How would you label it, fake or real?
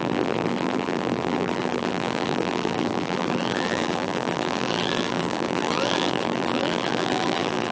fake